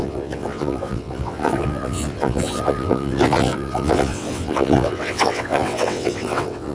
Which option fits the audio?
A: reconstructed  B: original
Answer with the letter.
A